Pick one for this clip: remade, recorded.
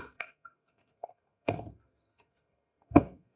remade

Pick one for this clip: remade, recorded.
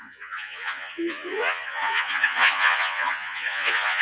remade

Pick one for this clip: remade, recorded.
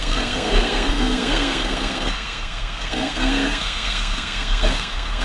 remade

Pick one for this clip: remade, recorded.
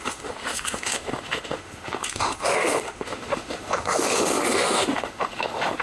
remade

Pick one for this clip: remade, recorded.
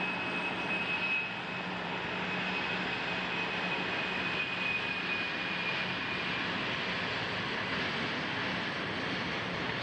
recorded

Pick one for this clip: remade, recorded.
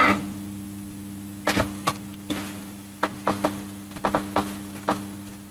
recorded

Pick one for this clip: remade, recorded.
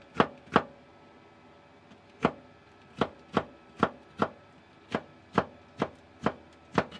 recorded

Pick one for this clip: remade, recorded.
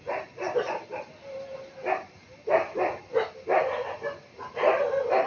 recorded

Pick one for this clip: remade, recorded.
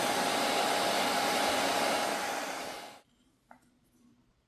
remade